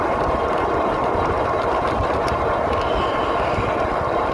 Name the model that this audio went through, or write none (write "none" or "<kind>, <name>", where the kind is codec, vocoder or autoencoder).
none